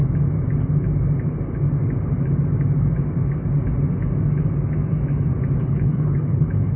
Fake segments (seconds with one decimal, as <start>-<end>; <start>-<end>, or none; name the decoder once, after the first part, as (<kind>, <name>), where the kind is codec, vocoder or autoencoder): 5.6-6.8 (codec, HILCodec)